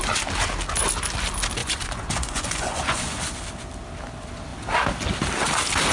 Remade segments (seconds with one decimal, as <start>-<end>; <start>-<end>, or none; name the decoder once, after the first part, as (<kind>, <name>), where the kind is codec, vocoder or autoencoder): 1.6-3.2 (vocoder, Vocos)